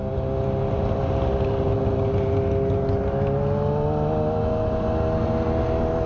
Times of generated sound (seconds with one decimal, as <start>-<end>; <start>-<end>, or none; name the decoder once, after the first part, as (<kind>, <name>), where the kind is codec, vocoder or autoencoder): none